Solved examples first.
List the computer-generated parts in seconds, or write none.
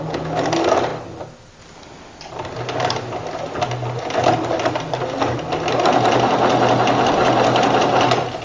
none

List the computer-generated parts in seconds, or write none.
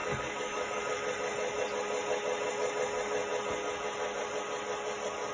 0.0-0.8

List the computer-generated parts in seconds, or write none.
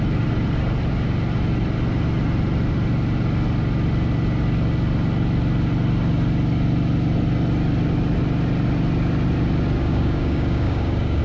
9.8-11.2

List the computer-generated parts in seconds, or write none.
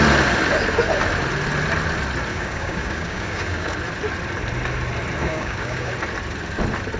2.3-3.7; 5.2-5.9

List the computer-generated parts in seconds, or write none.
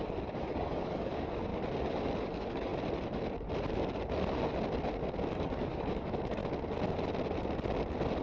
0.0-1.5; 2.2-2.7; 5.3-6.4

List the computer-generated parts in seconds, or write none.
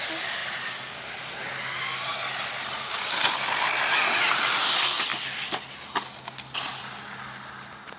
none